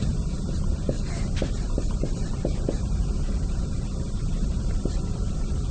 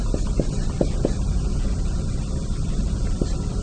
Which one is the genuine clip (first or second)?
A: second